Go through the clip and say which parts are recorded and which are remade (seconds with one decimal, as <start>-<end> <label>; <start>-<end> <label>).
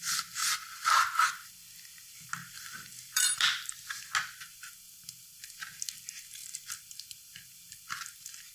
0.0-0.4 recorded; 0.4-1.5 remade; 1.5-2.4 recorded; 2.4-4.0 remade; 4.0-8.5 recorded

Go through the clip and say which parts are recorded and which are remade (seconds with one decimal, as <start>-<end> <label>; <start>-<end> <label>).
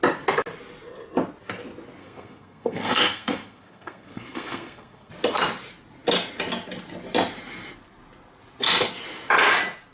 0.0-2.0 recorded; 2.0-5.1 remade; 5.1-9.9 recorded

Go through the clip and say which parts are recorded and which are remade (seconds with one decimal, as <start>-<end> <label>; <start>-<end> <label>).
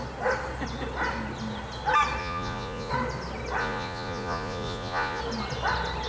0.0-2.2 recorded; 2.2-2.9 remade; 2.9-3.6 recorded; 3.6-5.2 remade; 5.2-6.1 recorded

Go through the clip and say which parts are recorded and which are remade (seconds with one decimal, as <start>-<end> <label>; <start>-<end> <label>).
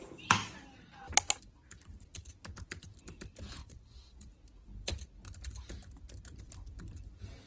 0.0-3.6 recorded; 3.6-4.3 remade; 4.3-7.5 recorded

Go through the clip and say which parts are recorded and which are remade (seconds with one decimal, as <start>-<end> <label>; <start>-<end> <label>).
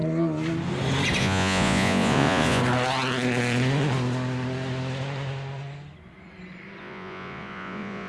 0.0-1.2 recorded; 1.2-2.6 remade; 2.6-6.8 recorded; 6.8-8.1 remade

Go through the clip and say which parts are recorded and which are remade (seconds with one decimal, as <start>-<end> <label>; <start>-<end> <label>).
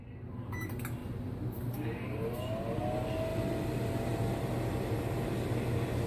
0.0-3.3 recorded; 3.3-5.3 remade; 5.3-6.1 recorded